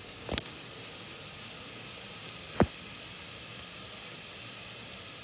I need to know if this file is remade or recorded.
recorded